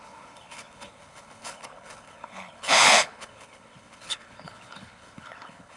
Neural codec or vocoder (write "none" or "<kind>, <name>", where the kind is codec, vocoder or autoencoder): codec, HILCodec